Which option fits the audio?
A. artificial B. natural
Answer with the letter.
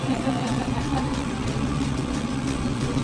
A